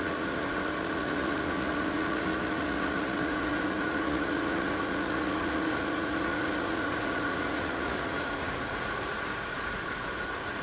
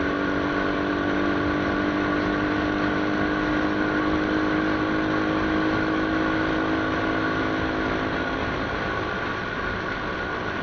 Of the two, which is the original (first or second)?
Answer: second